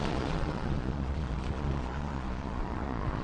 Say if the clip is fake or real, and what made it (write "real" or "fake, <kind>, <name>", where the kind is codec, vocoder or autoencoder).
fake, vocoder, Vocos